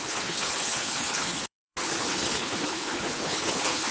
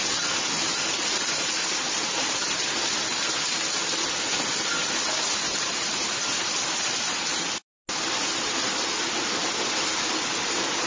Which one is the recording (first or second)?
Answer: second